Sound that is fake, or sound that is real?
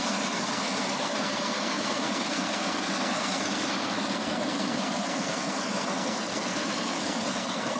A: fake